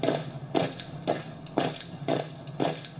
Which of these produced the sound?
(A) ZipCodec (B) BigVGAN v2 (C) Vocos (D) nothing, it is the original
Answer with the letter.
D